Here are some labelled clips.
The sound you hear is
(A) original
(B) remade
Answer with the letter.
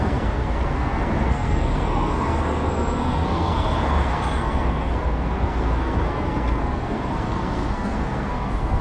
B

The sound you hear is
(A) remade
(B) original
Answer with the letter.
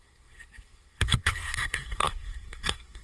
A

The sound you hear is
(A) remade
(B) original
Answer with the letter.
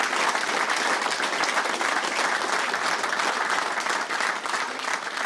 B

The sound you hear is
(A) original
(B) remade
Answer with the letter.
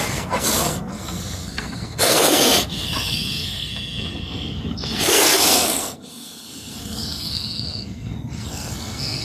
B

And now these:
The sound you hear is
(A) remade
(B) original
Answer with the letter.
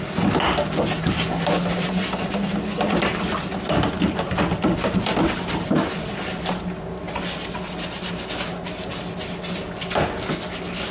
B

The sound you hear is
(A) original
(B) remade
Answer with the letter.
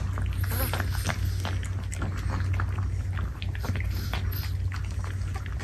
A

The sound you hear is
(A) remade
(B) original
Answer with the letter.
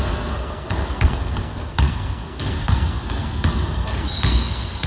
A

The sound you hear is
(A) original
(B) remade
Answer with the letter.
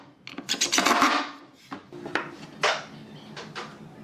A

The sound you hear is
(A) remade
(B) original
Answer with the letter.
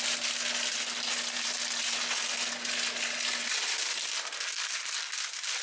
B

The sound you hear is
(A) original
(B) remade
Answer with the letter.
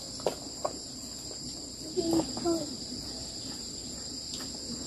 A